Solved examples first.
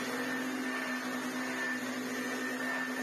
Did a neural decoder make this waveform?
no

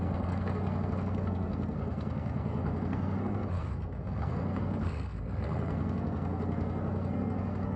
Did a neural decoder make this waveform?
yes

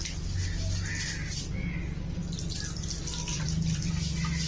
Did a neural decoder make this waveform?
no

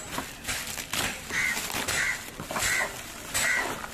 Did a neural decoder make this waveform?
no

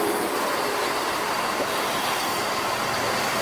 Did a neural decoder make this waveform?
yes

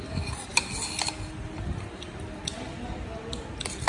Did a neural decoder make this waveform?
no